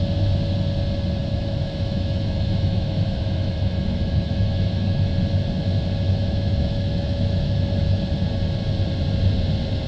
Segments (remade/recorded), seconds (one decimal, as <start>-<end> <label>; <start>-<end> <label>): 0.0-1.2 recorded; 1.2-5.1 remade; 5.1-6.1 recorded; 6.1-8.0 remade; 8.0-9.9 recorded